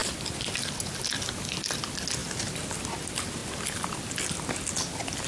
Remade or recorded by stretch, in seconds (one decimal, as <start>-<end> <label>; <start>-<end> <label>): 0.0-1.0 remade; 1.0-2.2 recorded; 2.2-2.8 remade; 2.8-3.4 recorded; 3.4-4.1 remade; 4.1-5.3 recorded